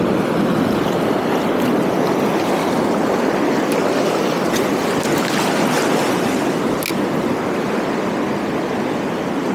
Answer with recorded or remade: recorded